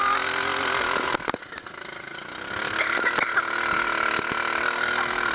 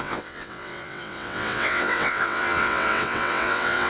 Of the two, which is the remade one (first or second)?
second